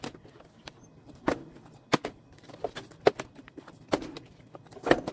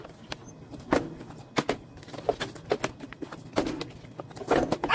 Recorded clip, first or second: second